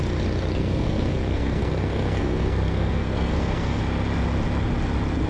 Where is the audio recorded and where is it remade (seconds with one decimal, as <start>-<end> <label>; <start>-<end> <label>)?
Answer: 0.0-0.6 recorded; 0.6-3.8 remade; 3.8-5.3 recorded